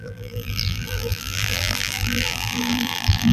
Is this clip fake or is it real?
fake